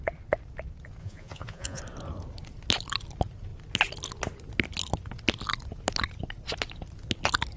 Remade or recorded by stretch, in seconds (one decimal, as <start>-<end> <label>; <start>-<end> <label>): 0.0-1.0 recorded; 1.0-1.8 remade; 1.8-7.6 recorded

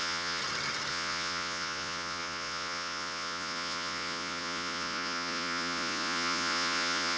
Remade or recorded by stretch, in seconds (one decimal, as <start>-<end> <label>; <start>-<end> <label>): 0.0-0.4 remade; 0.4-0.9 recorded; 0.9-7.2 remade

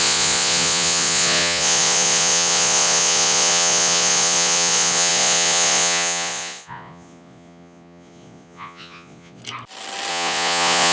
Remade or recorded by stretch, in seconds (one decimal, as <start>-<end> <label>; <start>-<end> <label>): 0.0-9.4 remade; 9.4-10.1 recorded; 10.1-10.9 remade

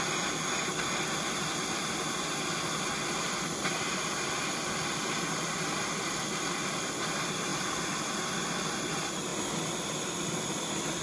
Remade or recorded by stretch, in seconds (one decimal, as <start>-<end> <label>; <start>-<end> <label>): 0.0-11.0 recorded

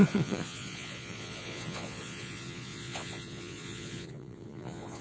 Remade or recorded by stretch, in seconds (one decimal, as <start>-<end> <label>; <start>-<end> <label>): 0.0-5.0 remade